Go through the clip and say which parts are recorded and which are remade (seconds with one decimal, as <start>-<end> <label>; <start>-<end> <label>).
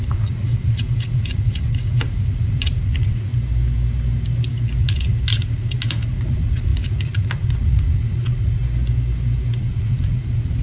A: 0.0-3.3 remade; 3.3-4.8 recorded; 4.8-8.6 remade; 8.6-9.6 recorded; 9.6-10.6 remade